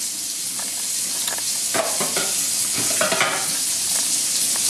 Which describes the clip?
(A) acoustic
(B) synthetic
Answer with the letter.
A